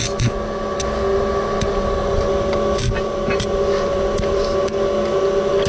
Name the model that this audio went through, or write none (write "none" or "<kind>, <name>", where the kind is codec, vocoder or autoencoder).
none